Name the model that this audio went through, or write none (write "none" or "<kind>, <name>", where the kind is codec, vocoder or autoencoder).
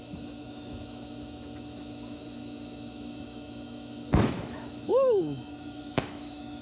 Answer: autoencoder, DAC-VAE